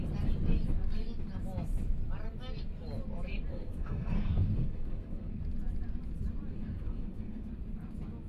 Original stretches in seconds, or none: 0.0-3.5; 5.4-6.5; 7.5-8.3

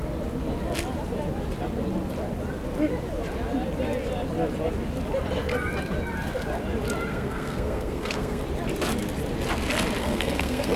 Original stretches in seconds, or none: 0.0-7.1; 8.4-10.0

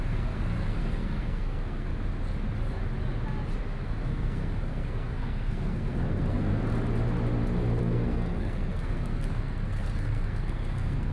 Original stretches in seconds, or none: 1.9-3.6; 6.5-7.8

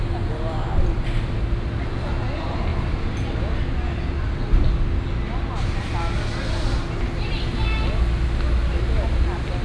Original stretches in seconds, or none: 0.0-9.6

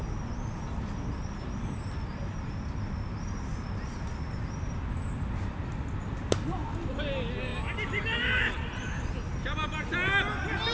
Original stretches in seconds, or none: 0.0-10.7